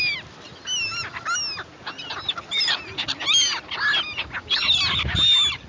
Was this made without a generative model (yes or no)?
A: yes